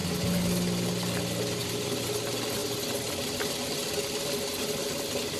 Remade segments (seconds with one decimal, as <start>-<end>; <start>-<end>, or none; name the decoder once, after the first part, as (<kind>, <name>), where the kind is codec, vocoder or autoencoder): none